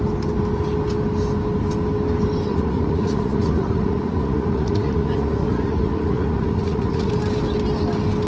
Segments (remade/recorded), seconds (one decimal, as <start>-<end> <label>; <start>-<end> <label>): 0.0-2.5 recorded; 2.5-7.1 remade; 7.1-8.3 recorded